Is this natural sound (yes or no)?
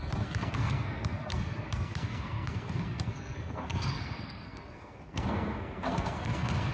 no